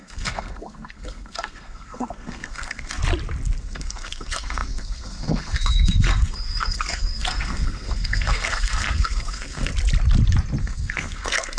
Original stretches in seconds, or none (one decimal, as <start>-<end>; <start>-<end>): 3.0-3.6; 9.7-10.6

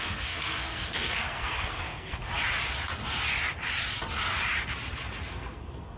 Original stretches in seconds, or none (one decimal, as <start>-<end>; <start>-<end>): 2.2-5.3

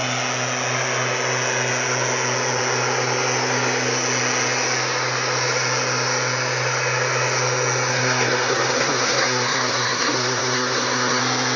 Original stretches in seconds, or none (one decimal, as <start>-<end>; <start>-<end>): 0.0-7.9; 11.2-11.6